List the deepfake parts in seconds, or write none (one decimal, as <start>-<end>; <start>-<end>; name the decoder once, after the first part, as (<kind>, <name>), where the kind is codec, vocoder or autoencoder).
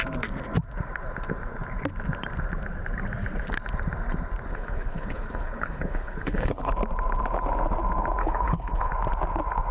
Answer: 4.5-6.7 (codec, HILCodec); 8.2-8.9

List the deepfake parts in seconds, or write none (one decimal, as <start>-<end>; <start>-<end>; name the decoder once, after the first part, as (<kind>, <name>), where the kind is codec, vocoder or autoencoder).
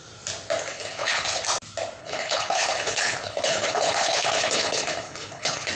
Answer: 0.7-1.4 (codec, HILCodec); 2.0-5.7